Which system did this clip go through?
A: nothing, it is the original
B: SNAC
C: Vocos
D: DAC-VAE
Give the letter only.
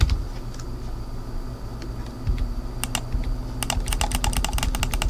A